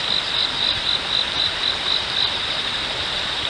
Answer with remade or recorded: recorded